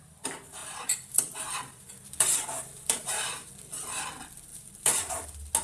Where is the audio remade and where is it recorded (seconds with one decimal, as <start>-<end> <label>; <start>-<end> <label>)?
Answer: 0.0-0.6 recorded; 0.6-3.5 remade; 3.5-4.5 recorded; 4.5-5.1 remade; 5.1-5.6 recorded